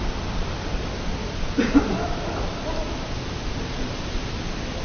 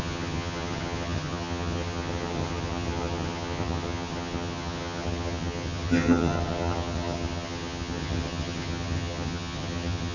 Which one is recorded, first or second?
first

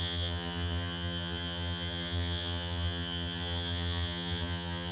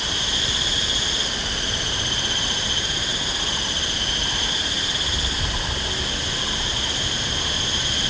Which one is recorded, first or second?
second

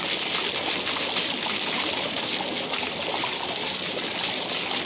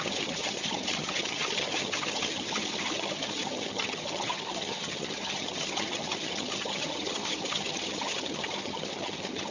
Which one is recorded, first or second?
first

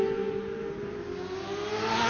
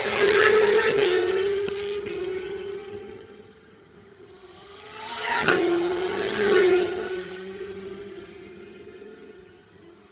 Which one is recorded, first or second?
first